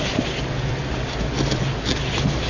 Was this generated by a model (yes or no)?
no